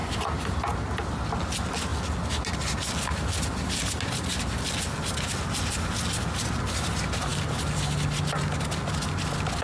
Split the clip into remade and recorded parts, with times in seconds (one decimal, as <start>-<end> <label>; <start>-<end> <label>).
0.0-9.6 recorded